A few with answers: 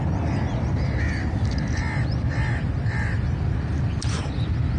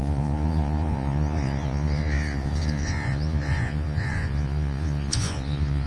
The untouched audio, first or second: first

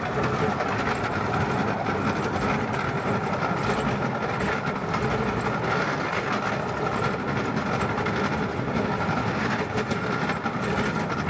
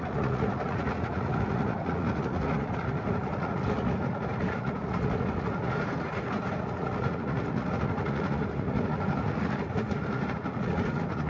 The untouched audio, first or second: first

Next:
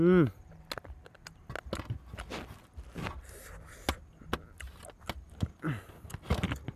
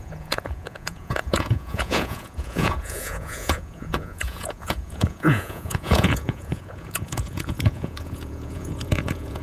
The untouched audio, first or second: first